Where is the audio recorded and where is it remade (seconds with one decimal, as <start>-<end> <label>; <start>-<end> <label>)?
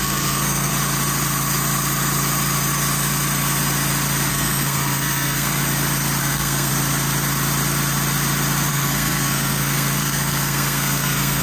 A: 0.0-0.7 remade; 0.7-4.3 recorded; 4.3-5.6 remade; 5.6-6.2 recorded; 6.2-6.7 remade; 6.7-8.7 recorded; 8.7-11.4 remade